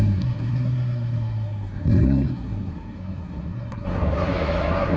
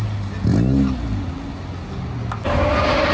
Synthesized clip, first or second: first